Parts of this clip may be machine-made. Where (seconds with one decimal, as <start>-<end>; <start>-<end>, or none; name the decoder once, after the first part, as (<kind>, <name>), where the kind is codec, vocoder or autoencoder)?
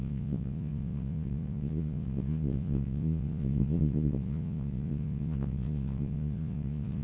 0.0-7.0 (vocoder, Vocos)